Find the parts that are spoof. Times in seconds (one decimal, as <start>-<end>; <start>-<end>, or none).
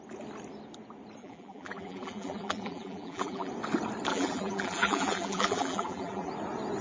1.2-3.5; 4.1-6.3